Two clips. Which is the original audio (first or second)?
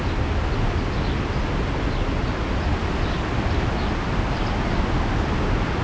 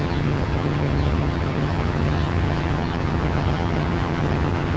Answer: first